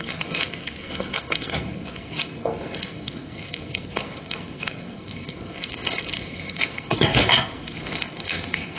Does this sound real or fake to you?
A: fake